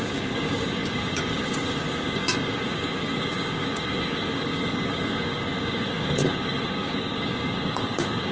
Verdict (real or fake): fake